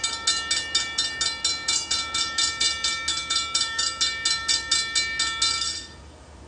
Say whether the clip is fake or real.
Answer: real